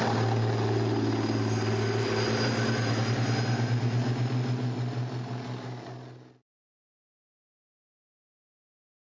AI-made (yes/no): no